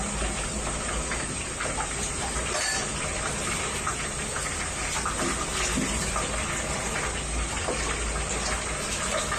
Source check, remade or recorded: recorded